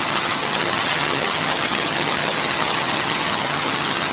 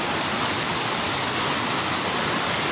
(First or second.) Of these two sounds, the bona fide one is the second